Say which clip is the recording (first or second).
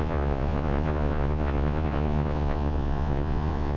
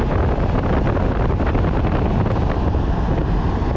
second